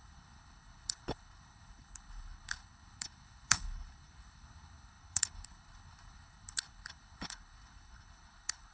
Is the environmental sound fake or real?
fake